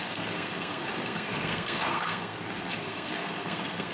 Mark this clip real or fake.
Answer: fake